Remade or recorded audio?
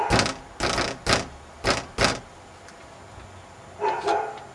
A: recorded